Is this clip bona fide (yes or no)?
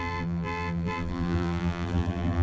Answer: no